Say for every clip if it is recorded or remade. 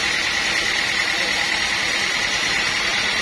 recorded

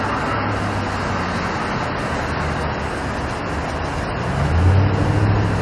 recorded